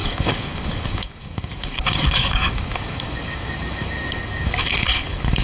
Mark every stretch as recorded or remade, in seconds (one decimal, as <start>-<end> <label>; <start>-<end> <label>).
0.0-5.4 remade

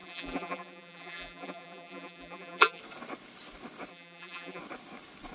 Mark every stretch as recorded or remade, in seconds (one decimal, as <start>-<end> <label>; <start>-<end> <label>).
0.0-2.8 remade; 2.8-3.9 recorded; 3.9-4.6 remade; 4.6-5.3 recorded

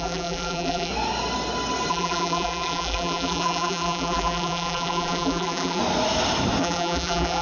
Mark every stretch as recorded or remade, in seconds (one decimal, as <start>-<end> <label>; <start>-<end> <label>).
0.0-0.9 remade; 0.9-1.9 recorded; 1.9-5.8 remade; 5.8-6.6 recorded; 6.6-7.4 remade

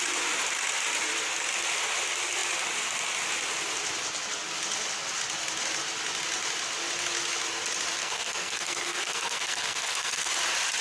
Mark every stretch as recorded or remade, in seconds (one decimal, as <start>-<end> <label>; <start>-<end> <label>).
0.0-8.0 recorded; 8.0-10.3 remade; 10.3-10.8 recorded

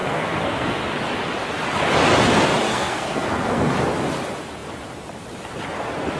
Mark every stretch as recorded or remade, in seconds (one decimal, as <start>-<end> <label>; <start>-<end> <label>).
0.0-0.8 remade; 0.8-2.7 recorded; 2.7-3.7 remade; 3.7-6.2 recorded

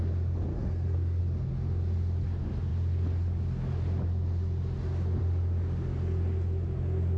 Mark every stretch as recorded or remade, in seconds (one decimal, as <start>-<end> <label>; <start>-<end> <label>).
0.0-0.5 recorded; 0.5-1.2 remade; 1.2-7.2 recorded